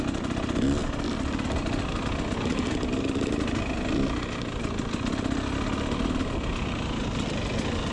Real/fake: real